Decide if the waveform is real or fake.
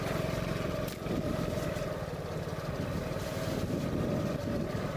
real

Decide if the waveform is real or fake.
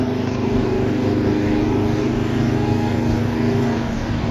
fake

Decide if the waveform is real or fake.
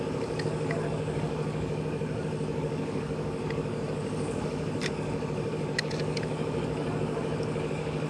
fake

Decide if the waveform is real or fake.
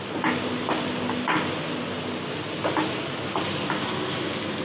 real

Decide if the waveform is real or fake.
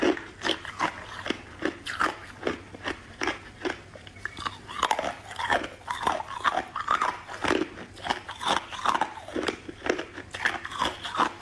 real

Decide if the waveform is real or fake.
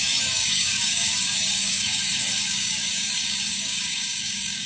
fake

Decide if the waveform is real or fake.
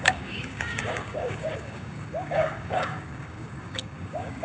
fake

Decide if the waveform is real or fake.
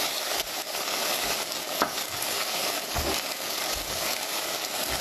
fake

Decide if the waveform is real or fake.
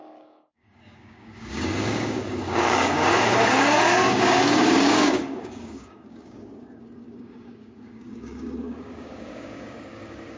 fake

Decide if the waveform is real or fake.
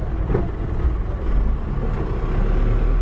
real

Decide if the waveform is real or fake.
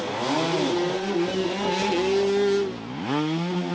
real